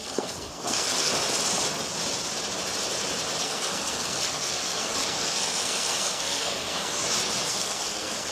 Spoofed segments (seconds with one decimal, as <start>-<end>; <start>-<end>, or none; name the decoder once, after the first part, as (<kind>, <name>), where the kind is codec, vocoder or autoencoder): 0.0-1.1 (codec, SNAC); 3.4-7.0; 7.5-8.3